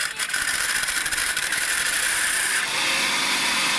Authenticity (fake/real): fake